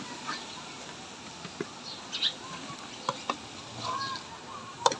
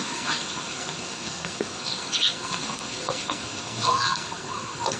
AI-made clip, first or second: second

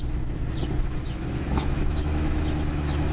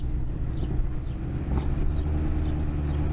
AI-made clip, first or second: first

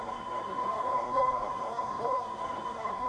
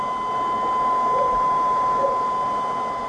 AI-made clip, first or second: first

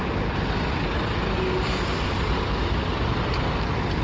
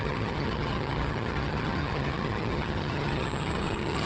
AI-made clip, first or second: second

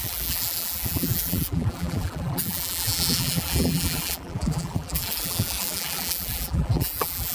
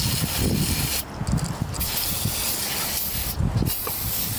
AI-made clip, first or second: first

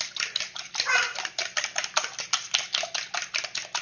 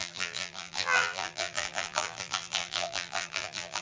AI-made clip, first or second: second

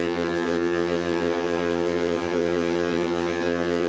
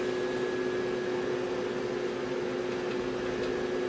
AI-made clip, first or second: first